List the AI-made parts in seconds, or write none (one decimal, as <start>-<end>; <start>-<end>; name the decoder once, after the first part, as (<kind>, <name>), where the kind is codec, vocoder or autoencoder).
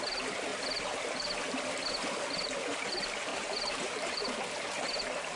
3.3-4.2 (vocoder, BigVGAN v2)